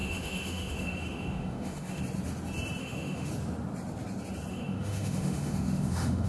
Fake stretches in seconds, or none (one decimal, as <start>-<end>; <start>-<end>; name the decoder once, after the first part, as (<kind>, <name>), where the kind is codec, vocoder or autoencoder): 0.0-2.0 (autoencoder, DAC-VAE); 2.8-3.3; 4.5-6.3